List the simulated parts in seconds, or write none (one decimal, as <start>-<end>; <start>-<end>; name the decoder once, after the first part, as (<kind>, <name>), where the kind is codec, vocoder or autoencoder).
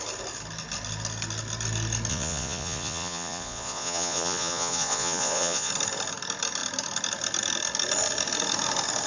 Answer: 2.1-5.7 (vocoder, Vocos)